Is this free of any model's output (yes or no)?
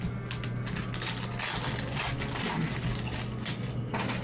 yes